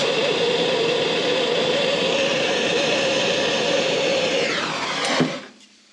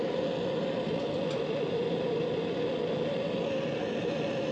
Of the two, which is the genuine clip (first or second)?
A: second